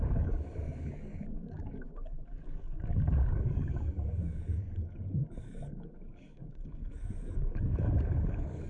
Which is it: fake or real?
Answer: fake